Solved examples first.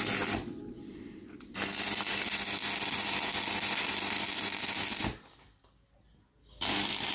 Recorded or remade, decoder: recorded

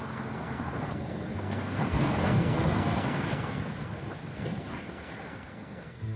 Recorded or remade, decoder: remade, codec, SNAC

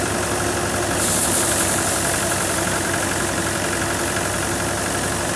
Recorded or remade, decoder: recorded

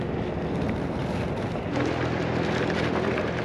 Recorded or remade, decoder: remade, vocoder, BigVGAN v2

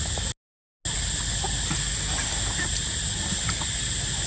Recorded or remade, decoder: recorded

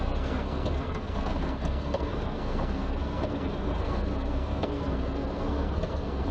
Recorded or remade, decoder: remade, codec, SNAC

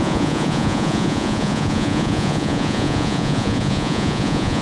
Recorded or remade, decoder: remade, vocoder, Vocos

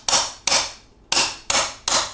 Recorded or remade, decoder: recorded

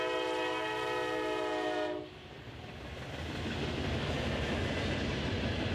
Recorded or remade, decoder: recorded